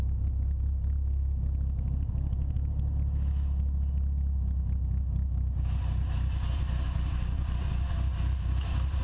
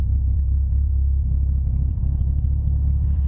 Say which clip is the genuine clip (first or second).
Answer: first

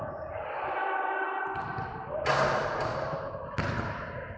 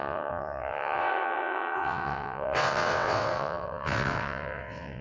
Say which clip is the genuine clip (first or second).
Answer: first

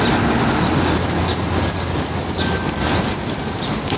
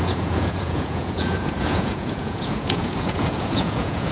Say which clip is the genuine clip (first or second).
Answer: first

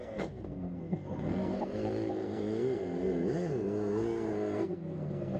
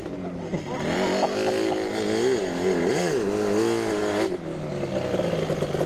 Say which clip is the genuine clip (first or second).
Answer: second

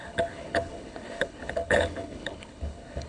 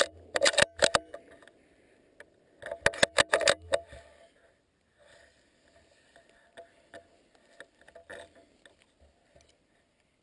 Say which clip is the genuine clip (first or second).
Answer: second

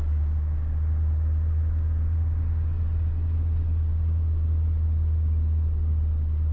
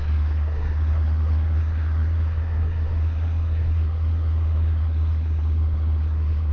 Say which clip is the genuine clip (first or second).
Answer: first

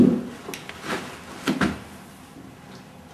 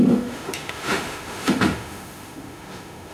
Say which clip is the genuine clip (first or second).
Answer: first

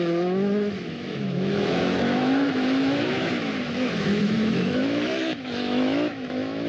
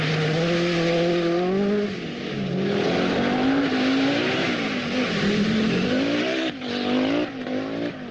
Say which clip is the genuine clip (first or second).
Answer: second